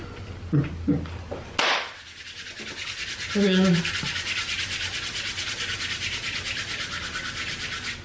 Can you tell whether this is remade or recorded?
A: recorded